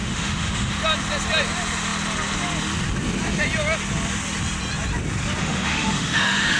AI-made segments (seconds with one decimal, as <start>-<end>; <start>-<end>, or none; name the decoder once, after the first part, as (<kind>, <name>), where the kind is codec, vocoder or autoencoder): 0.0-0.7 (autoencoder, DAC-VAE); 5.4-6.6